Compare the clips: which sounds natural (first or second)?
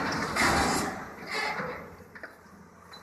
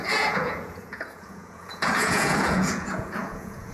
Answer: first